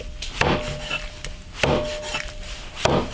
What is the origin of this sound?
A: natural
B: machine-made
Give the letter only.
A